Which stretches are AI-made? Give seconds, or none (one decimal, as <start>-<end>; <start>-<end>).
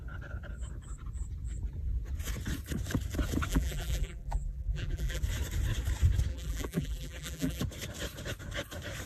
3.5-5.2; 6.3-7.6